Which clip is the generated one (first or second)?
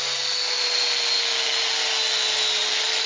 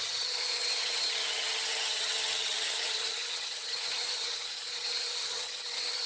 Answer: second